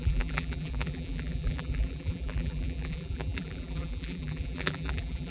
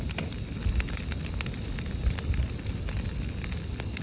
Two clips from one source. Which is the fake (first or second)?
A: first